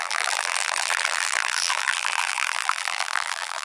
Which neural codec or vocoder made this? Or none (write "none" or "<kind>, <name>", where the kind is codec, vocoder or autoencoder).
vocoder, BigVGAN v2